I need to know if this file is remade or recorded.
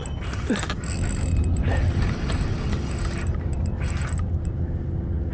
recorded